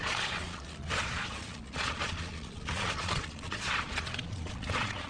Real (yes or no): no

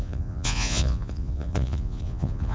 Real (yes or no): no